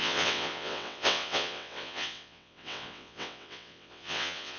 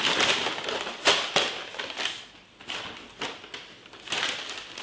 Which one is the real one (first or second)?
second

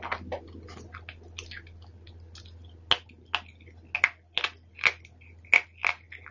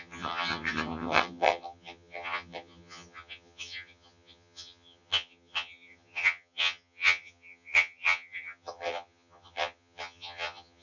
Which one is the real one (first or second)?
first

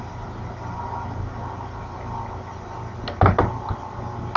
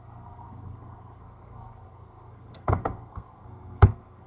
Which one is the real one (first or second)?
first